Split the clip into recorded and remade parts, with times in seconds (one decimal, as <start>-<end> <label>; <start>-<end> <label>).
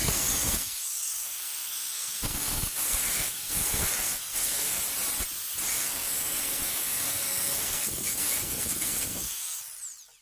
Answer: 0.0-4.8 remade; 4.8-5.7 recorded; 5.7-9.6 remade; 9.6-10.2 recorded